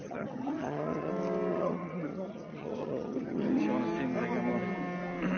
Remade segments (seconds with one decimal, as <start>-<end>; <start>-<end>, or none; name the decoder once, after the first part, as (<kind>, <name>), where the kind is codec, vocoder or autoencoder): 0.0-1.1 (vocoder, HiFi-GAN); 1.5-3.6